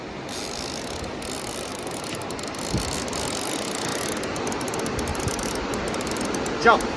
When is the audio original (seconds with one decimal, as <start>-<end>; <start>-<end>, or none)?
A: 0.0-1.7; 2.3-5.1; 6.1-7.0